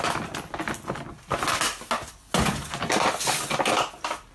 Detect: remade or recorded recorded